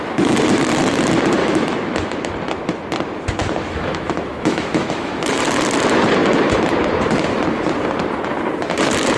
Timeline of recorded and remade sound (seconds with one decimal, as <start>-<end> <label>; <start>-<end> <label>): 0.0-1.4 recorded; 1.4-2.3 remade; 2.3-3.4 recorded; 3.4-5.4 remade; 5.4-9.2 recorded